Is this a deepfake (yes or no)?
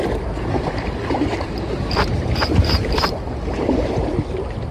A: yes